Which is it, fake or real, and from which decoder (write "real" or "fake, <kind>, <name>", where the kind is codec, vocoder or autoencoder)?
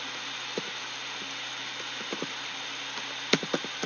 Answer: real